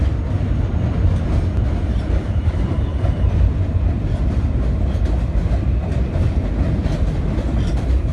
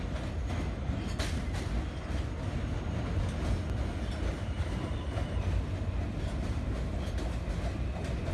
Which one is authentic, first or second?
second